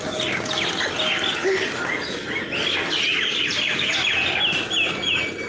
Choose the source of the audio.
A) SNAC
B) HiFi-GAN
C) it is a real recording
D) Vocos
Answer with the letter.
C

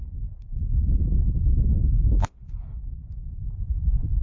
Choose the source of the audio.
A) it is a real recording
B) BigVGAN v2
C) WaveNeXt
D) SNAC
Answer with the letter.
A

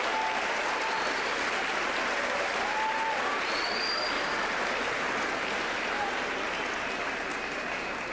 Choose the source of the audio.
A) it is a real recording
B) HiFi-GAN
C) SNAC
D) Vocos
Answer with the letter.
A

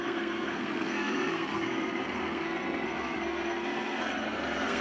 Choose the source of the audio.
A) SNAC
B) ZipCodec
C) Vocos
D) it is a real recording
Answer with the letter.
A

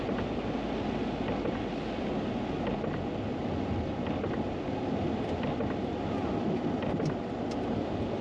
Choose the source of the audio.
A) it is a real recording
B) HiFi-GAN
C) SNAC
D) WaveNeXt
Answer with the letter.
A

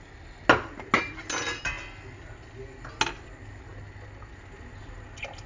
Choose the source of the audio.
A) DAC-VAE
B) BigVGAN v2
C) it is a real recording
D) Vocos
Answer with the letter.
C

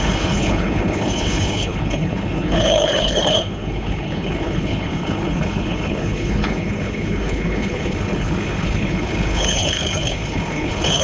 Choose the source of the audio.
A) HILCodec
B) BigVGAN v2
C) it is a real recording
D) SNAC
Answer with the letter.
A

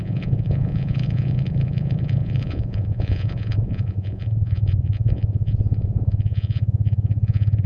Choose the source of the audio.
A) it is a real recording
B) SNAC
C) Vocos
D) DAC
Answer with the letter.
C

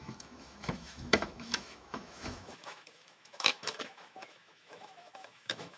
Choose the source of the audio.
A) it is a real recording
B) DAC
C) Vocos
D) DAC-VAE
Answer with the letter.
D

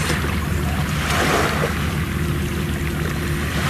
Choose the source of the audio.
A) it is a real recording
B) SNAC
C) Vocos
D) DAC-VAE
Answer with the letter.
A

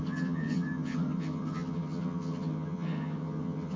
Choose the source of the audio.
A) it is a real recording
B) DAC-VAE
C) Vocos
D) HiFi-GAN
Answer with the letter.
D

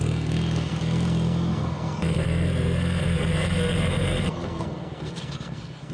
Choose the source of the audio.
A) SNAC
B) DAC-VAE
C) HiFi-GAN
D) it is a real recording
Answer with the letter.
A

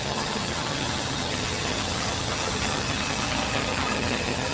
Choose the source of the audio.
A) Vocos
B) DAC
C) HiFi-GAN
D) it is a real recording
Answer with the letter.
C